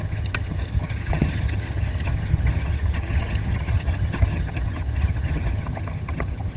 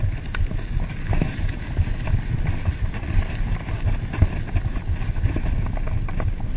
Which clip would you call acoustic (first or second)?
second